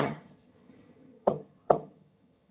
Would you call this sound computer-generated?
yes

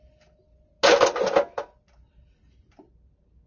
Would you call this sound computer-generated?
no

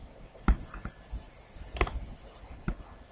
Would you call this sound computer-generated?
no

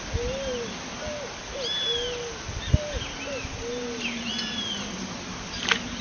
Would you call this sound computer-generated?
no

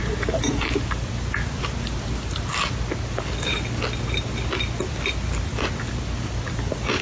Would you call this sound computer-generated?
no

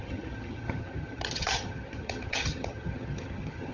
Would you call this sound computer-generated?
yes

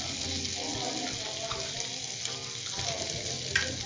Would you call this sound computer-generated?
no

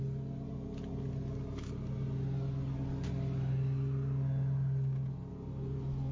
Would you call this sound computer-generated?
no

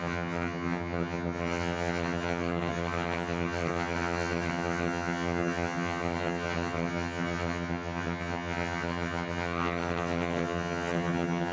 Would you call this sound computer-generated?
yes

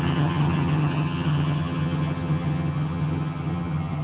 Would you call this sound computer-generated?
yes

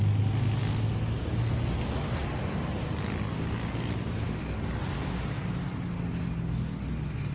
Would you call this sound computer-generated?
no